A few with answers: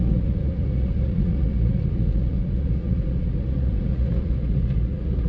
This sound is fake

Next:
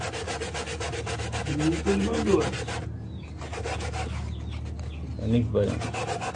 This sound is real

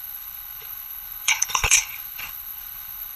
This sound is fake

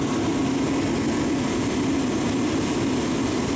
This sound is real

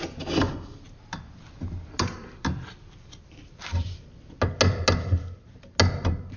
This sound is real